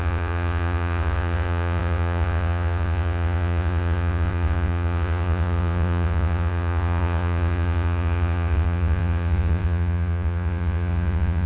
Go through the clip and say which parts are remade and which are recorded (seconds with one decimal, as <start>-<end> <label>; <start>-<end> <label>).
0.0-11.5 remade